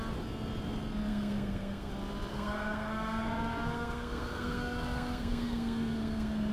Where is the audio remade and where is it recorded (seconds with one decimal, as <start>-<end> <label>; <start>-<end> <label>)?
0.0-1.1 recorded; 1.1-1.9 remade; 1.9-2.3 recorded; 2.3-6.5 remade